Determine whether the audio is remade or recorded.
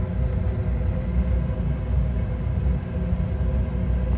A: recorded